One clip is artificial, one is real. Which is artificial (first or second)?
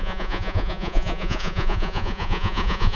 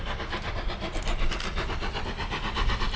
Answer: first